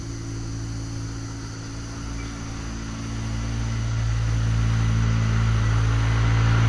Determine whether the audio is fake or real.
real